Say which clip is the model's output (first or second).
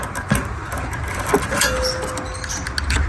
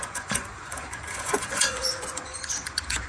second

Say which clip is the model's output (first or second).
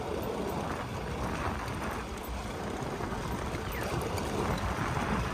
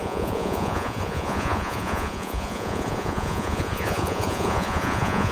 second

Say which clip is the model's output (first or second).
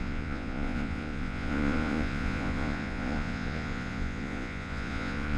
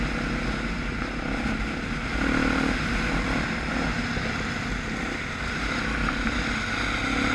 first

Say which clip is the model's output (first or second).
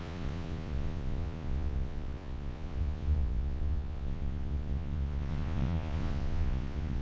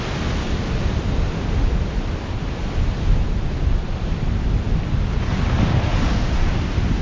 first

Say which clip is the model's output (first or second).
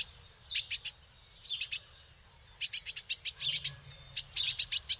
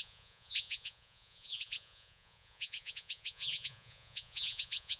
second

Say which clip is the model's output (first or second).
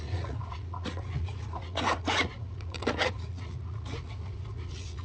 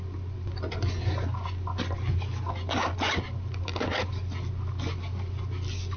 first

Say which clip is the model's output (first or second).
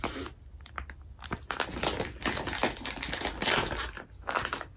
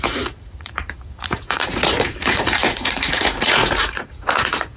second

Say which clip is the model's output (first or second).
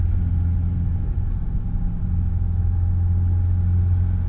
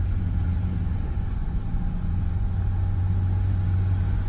second